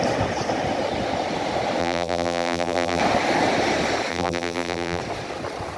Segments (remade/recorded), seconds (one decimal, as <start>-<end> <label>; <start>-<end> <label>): 0.0-1.8 recorded; 1.8-3.0 remade; 3.0-4.1 recorded; 4.1-5.0 remade; 5.0-5.8 recorded